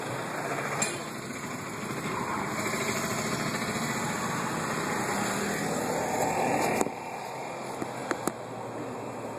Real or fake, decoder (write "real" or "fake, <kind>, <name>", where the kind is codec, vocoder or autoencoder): real